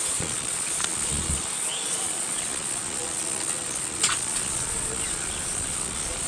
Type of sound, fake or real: fake